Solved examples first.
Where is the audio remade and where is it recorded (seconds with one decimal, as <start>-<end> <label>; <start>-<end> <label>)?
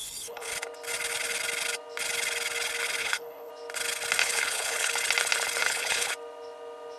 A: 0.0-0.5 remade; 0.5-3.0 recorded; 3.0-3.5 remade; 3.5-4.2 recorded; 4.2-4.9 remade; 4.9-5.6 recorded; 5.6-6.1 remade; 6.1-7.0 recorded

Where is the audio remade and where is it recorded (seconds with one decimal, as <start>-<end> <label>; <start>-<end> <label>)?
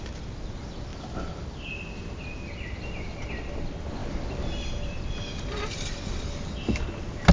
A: 0.0-7.3 recorded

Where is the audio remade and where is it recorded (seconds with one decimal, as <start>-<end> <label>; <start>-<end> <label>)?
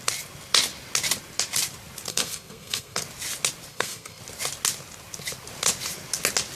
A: 0.0-2.1 recorded; 2.1-3.0 remade; 3.0-3.7 recorded; 3.7-4.2 remade; 4.2-6.6 recorded